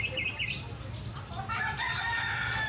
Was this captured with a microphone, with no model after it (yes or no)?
yes